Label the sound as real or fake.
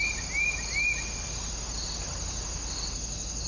real